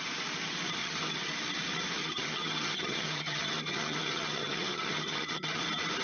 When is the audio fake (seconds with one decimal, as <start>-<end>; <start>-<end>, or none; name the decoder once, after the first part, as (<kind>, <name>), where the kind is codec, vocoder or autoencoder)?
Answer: 0.8-1.3 (vocoder, HiFi-GAN); 2.0-5.6